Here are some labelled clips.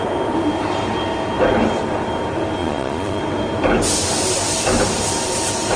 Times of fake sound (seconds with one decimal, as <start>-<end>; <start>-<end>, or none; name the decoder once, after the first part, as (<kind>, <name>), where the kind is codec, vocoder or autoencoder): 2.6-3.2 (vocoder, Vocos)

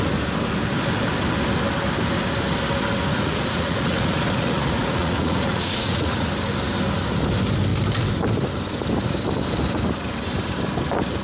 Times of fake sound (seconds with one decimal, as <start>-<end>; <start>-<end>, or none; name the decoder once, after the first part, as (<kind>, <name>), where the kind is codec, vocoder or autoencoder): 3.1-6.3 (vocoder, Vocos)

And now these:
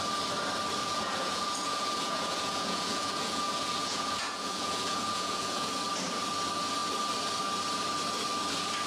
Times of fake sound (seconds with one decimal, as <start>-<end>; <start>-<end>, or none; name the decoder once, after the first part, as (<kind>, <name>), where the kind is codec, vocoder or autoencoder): 0.8-5.7 (vocoder, Vocos)